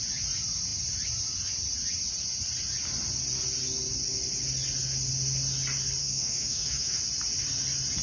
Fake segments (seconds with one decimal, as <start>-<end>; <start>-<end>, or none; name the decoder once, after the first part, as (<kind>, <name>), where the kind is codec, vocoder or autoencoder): 6.0-7.0 (autoencoder, DAC-VAE)